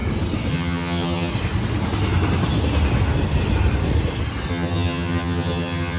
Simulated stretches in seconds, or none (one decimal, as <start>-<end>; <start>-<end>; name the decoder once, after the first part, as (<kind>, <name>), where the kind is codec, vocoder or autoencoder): 0.5-1.3 (vocoder, HiFi-GAN); 4.5-6.0